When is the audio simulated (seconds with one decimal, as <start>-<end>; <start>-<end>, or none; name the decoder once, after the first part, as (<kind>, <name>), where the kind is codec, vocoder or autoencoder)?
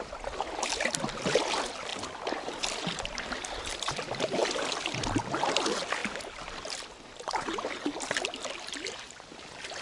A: none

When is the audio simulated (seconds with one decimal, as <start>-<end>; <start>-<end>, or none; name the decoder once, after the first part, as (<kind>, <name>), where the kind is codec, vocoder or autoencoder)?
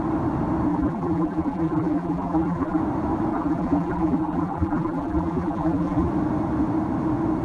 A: 0.7-2.8 (vocoder, BigVGAN v2); 3.3-6.1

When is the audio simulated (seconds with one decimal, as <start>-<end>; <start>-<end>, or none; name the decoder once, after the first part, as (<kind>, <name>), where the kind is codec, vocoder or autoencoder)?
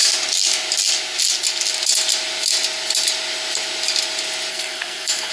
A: 4.5-5.3 (codec, SNAC)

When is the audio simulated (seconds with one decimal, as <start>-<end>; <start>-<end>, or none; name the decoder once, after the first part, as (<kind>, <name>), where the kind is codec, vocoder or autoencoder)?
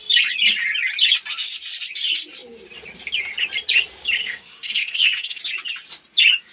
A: 4.2-5.4 (codec, SNAC)